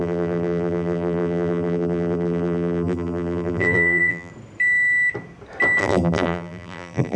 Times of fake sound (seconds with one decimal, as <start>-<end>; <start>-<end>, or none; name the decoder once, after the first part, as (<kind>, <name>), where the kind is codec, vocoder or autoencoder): 0.0-4.3 (vocoder, BigVGAN v2); 5.8-7.2